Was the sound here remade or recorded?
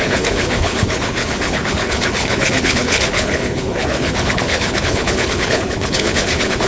remade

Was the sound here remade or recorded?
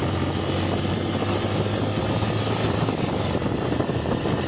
recorded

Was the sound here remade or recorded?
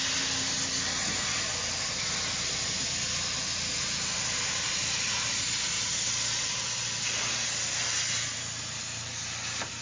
recorded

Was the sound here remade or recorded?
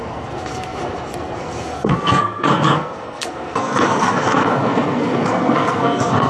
remade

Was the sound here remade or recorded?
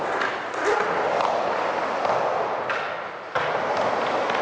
recorded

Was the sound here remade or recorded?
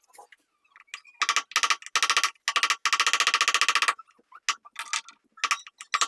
recorded